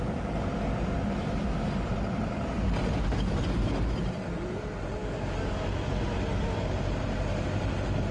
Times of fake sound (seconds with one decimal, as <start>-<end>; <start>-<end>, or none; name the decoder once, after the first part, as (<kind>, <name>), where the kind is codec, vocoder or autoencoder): 5.0-5.5 (codec, DAC)

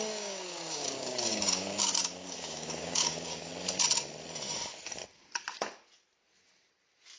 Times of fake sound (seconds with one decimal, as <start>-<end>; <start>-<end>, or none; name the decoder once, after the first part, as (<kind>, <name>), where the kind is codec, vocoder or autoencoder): 0.0-3.5 (codec, DAC)

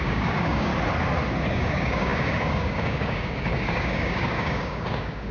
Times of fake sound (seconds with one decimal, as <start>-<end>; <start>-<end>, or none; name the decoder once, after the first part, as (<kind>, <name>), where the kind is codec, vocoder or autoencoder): 0.0-0.7 (codec, DAC); 1.5-5.3

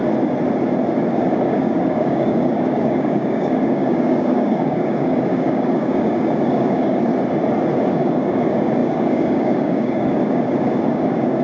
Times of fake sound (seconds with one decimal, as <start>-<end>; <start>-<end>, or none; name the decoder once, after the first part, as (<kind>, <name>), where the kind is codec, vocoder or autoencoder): 1.1-7.1 (codec, DAC); 7.9-11.4

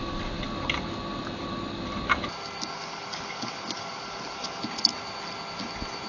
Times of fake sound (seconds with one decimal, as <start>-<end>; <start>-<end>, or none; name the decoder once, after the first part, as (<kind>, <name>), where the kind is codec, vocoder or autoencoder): 2.7-4.6 (codec, DAC)

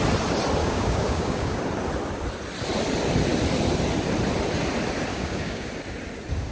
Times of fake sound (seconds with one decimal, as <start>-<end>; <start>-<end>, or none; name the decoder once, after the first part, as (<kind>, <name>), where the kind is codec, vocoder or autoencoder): 0.6-1.6 (codec, DAC); 5.1-5.7

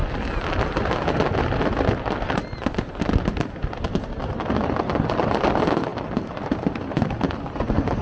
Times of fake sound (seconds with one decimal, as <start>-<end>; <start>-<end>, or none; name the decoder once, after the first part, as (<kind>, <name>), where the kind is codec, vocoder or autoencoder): none